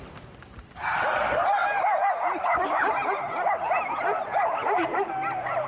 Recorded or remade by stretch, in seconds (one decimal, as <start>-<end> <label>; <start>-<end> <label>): 0.0-5.7 recorded

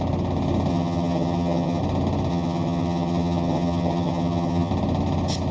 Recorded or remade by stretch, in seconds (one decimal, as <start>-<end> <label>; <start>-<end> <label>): 0.0-0.7 recorded; 0.7-1.8 remade; 1.8-2.3 recorded; 2.3-4.7 remade; 4.7-5.5 recorded

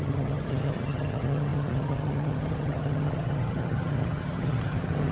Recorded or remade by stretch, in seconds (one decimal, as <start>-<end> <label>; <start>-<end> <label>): 0.0-5.1 remade

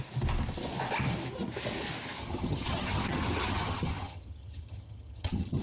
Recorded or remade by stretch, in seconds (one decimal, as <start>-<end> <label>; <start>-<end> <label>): 0.0-2.2 recorded; 2.2-5.6 remade

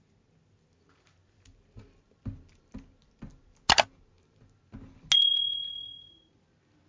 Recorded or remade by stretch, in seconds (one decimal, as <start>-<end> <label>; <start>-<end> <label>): 0.0-6.9 recorded

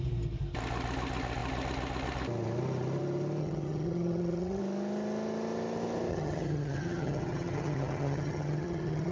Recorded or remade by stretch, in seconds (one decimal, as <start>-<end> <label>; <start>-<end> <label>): 0.0-3.4 recorded; 3.4-4.6 remade; 4.6-6.1 recorded; 6.1-9.1 remade

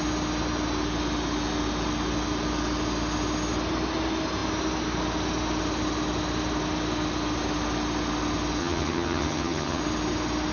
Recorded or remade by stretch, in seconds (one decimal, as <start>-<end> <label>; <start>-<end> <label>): 0.0-8.6 recorded; 8.6-9.8 remade; 9.8-10.5 recorded

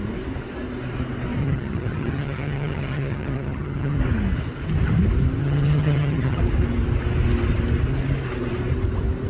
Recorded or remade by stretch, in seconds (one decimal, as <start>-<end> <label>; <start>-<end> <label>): 0.0-1.4 recorded; 1.4-4.0 remade; 4.0-5.4 recorded; 5.4-6.4 remade; 6.4-9.3 recorded